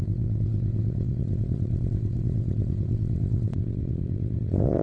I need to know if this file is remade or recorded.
remade